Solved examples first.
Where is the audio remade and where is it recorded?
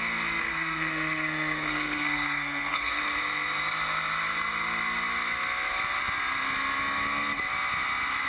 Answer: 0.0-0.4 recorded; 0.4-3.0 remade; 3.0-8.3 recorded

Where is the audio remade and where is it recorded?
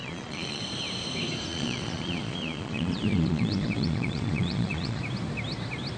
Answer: 0.0-0.6 remade; 0.6-1.5 recorded; 1.5-5.0 remade; 5.0-6.0 recorded